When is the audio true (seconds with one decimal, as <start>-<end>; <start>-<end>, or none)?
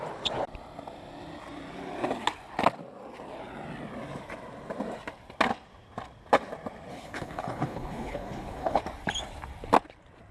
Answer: 0.0-6.9; 8.8-10.3